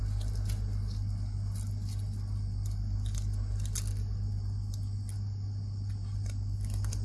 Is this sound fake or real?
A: real